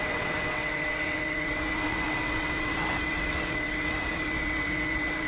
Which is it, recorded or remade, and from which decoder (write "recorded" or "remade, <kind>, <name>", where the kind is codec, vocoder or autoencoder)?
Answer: remade, vocoder, WaveNeXt